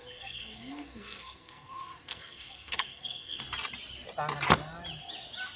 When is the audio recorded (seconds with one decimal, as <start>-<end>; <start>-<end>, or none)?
3.4-5.6